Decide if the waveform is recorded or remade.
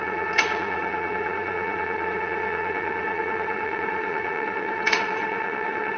remade